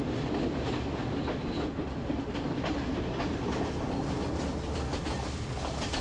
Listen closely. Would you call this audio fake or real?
real